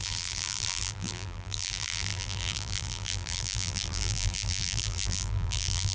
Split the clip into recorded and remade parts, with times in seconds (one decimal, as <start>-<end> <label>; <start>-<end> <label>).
0.0-5.9 remade